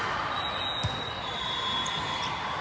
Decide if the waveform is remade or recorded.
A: recorded